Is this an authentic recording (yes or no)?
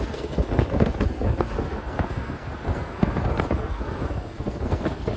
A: no